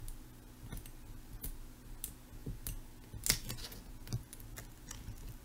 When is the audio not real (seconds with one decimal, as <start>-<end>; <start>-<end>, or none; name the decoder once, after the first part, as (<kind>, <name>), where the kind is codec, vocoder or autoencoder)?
none